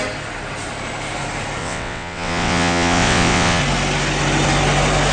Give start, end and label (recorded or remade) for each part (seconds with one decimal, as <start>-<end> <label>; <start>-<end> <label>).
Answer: 0.0-1.6 recorded; 1.6-3.6 remade; 3.6-5.1 recorded

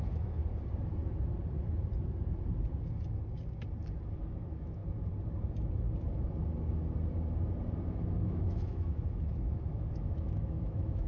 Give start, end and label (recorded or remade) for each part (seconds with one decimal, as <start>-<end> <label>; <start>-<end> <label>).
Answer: 0.0-0.4 remade; 0.4-4.1 recorded; 4.1-4.8 remade; 4.8-7.9 recorded; 7.9-11.1 remade

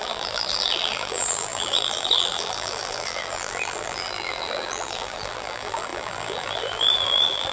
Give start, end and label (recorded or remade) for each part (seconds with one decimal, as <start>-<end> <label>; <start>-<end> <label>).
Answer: 0.0-7.5 remade

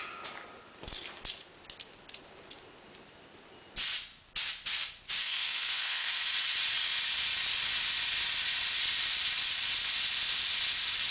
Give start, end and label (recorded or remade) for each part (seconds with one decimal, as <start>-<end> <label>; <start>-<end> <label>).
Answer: 0.0-5.2 recorded; 5.2-6.1 remade; 6.1-11.1 recorded

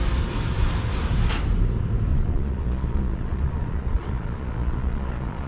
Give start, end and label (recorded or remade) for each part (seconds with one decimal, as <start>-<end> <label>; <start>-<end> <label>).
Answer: 0.0-2.1 recorded; 2.1-5.5 remade

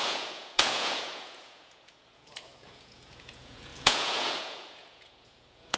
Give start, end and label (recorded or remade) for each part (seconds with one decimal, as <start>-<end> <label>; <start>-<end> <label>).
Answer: 0.0-5.8 remade